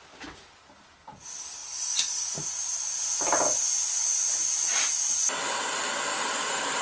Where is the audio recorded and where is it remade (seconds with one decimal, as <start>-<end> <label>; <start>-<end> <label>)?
0.0-6.1 recorded; 6.1-6.8 remade